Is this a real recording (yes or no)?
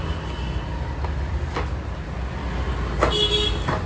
yes